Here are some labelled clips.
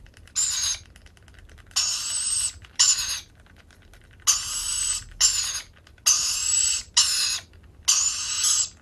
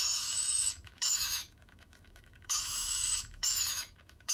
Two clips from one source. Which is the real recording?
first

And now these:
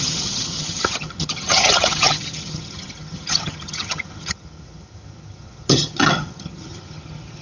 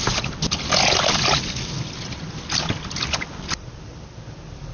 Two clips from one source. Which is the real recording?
second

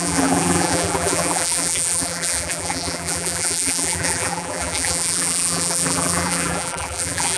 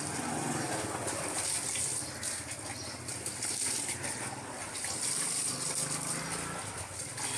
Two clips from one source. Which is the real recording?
second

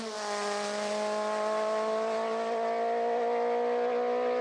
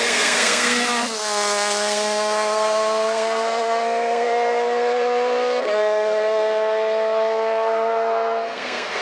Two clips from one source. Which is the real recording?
first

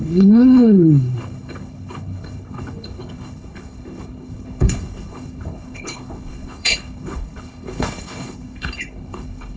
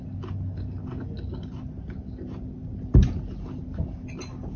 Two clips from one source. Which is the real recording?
second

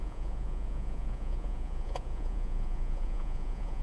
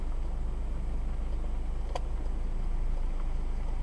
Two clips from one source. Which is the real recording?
second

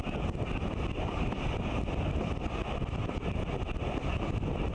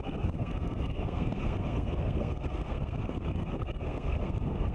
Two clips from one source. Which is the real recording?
first